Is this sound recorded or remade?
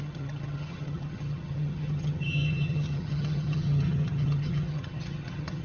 remade